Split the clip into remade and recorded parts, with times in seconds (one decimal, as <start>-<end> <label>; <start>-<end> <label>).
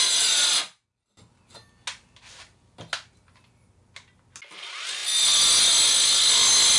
0.0-6.8 recorded